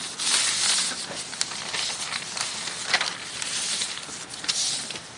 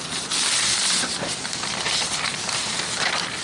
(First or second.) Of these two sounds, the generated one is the second